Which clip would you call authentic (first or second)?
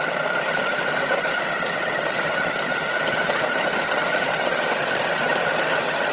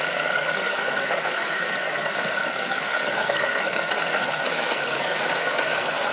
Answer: first